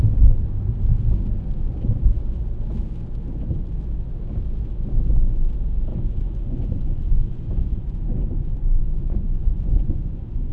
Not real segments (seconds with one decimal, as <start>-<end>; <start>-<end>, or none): 5.9-10.5